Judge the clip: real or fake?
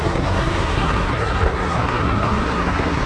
fake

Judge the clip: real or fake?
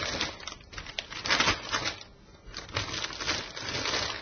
real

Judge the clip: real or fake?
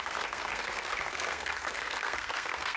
fake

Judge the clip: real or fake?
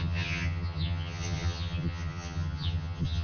fake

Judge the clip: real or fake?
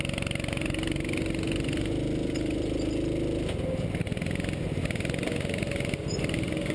real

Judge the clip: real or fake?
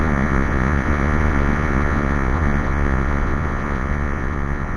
fake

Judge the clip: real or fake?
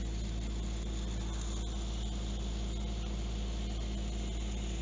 real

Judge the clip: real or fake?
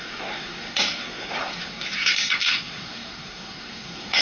fake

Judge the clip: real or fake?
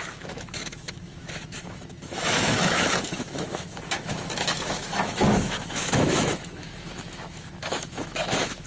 fake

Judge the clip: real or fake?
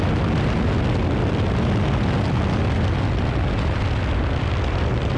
real